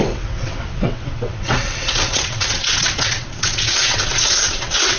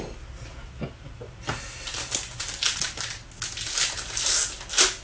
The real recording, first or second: second